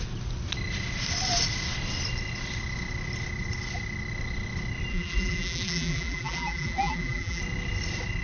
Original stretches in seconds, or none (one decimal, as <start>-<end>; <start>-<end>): 0.0-4.9; 7.4-8.2

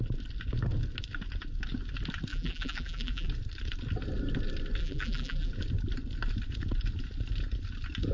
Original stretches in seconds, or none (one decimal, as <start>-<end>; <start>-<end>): 0.0-2.3; 3.3-4.8; 5.5-8.1

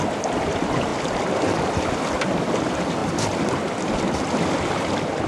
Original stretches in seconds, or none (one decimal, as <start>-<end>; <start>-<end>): 0.9-2.3; 3.0-3.5

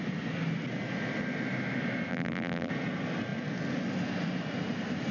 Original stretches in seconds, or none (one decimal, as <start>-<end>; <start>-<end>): 0.0-2.1; 2.7-5.1

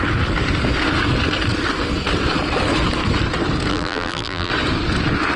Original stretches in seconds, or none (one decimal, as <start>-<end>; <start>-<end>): 0.0-3.7; 4.5-5.4

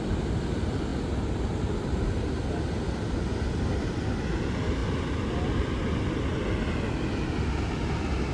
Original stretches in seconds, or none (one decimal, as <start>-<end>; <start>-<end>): 0.0-8.3